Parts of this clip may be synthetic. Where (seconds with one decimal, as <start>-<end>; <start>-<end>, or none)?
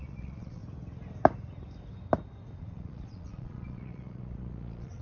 0.0-0.6; 2.6-5.0